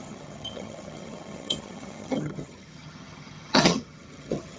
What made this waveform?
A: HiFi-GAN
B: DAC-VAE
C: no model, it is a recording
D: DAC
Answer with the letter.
A